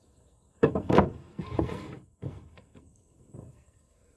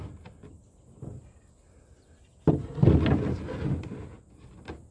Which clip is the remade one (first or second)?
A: first